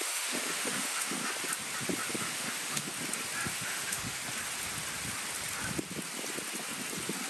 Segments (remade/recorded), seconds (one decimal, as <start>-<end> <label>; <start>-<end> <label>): 0.0-1.2 remade; 1.2-2.1 recorded; 2.1-2.9 remade; 2.9-3.5 recorded; 3.5-4.2 remade; 4.2-7.3 recorded